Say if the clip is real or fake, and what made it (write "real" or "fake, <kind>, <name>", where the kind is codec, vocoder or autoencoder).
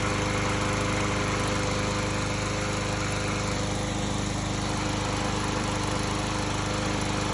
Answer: real